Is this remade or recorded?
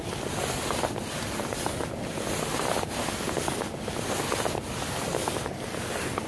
recorded